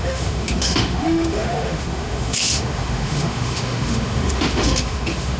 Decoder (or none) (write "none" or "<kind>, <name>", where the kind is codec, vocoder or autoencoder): autoencoder, DAC-VAE